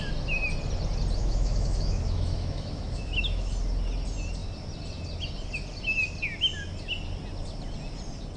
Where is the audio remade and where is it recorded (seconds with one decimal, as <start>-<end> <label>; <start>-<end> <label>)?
0.0-1.2 recorded; 1.2-3.5 remade; 3.5-8.4 recorded